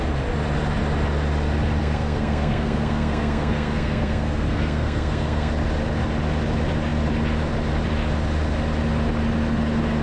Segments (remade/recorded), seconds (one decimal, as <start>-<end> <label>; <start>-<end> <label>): 0.0-1.8 recorded; 1.8-5.5 remade; 5.5-10.0 recorded

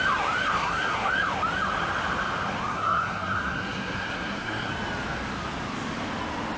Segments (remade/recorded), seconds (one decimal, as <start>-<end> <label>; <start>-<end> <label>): 0.0-0.5 recorded; 0.5-1.1 remade; 1.1-2.7 recorded; 2.7-4.7 remade; 4.7-6.6 recorded

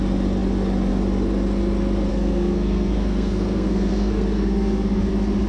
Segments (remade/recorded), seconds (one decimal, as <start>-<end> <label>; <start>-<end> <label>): 0.0-2.1 recorded; 2.1-5.1 remade; 5.1-5.5 recorded

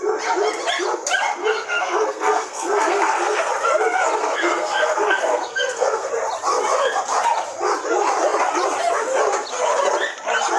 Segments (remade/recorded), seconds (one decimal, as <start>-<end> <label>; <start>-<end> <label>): 0.0-1.4 recorded; 1.4-3.5 remade; 3.5-4.2 recorded; 4.2-6.1 remade; 6.1-10.6 recorded